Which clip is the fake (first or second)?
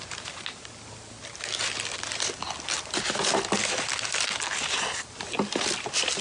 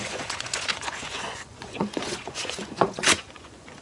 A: second